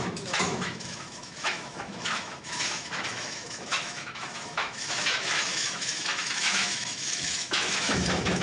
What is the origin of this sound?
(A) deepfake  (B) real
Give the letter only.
A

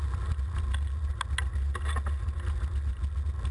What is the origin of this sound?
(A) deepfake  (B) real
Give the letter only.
B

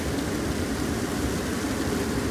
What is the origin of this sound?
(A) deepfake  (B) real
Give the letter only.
B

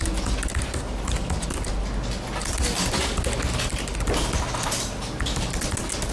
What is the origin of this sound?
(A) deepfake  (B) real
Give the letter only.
B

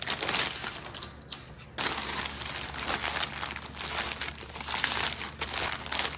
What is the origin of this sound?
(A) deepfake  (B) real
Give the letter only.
B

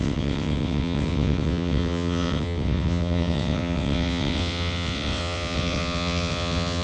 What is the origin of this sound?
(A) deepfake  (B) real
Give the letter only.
A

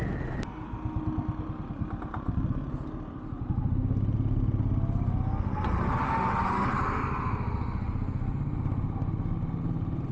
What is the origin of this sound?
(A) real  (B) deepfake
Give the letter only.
A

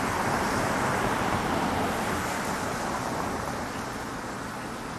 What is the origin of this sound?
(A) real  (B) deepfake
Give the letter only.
A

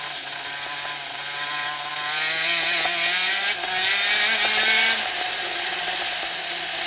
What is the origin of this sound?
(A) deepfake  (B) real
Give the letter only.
B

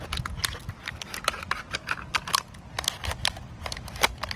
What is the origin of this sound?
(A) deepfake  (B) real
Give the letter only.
B